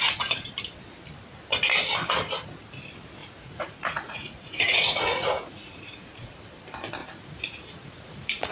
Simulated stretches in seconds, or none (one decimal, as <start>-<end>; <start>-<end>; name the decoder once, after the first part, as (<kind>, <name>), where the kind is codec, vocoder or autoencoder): 0.0-0.5 (vocoder, Vocos); 3.2-6.3; 7.0-8.5

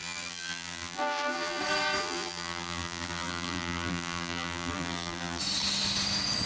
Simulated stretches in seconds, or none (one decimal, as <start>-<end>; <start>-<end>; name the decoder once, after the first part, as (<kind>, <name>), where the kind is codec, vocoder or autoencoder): 0.0-1.6 (vocoder, BigVGAN v2); 2.0-5.4

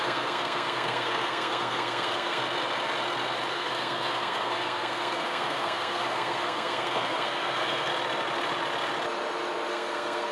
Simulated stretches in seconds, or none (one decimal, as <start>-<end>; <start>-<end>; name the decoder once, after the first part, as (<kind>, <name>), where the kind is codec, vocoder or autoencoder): 0.0-2.4 (codec, SNAC); 3.5-7.9; 9.7-10.3